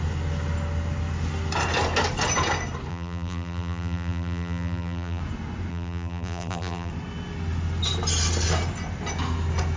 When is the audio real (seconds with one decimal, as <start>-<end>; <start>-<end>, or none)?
0.0-2.9; 5.2-5.7; 6.9-9.8